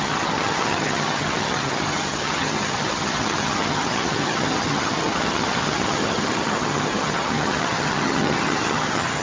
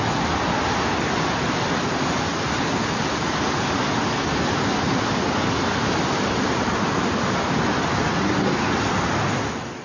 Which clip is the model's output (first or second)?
first